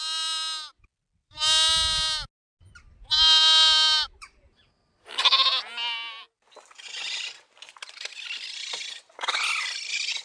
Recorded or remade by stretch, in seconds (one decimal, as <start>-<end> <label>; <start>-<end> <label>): 0.0-10.2 recorded